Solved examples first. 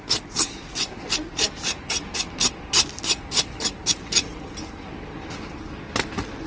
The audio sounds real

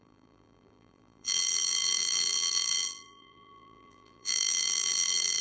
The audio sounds fake